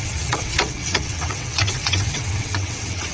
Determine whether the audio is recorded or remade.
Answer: remade